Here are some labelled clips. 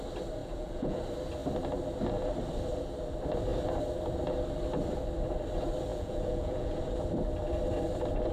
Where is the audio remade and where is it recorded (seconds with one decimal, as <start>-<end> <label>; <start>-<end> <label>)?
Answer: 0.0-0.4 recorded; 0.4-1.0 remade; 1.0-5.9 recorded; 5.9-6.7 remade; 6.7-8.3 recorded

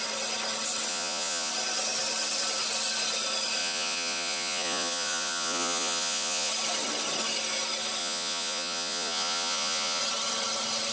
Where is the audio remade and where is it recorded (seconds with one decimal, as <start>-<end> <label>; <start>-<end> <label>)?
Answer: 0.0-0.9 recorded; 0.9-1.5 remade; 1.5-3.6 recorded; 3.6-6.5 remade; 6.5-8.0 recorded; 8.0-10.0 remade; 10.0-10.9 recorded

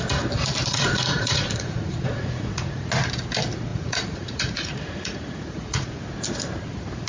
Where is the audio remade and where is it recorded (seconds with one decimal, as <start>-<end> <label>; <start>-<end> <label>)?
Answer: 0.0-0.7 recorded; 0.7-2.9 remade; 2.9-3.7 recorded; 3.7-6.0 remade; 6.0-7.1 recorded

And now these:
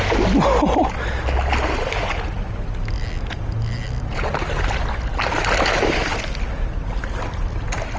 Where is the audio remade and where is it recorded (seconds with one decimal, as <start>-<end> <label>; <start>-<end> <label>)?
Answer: 0.0-8.0 recorded

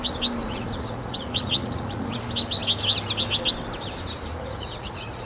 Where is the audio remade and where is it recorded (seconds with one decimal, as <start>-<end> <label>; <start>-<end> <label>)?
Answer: 0.0-0.4 recorded; 0.4-2.2 remade; 2.2-4.3 recorded; 4.3-5.3 remade